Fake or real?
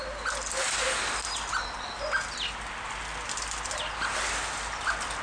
real